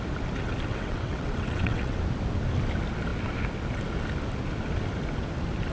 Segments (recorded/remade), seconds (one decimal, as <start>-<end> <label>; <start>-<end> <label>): 0.0-0.7 recorded; 0.7-2.0 remade; 2.0-5.7 recorded